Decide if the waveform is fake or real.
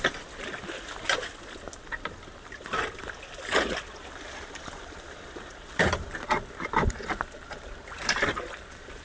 real